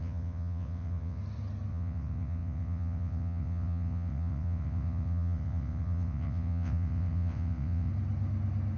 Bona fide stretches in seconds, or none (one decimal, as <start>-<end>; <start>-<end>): 1.2-1.7; 7.9-8.8